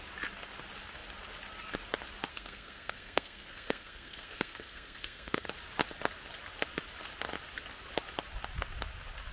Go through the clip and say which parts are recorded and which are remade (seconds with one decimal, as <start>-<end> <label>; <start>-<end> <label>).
0.0-2.3 recorded; 2.3-5.5 remade; 5.5-9.3 recorded